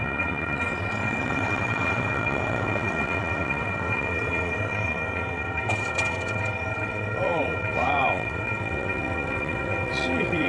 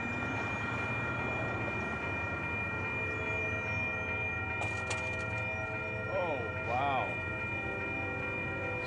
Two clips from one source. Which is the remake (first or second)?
first